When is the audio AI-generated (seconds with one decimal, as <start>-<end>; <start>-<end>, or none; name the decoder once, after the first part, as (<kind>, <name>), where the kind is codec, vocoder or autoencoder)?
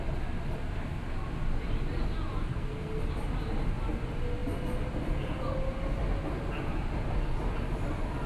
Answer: 2.5-3.0 (codec, SNAC)